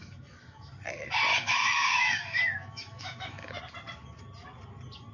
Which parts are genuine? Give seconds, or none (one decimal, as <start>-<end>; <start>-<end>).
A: 0.7-1.3; 3.6-5.1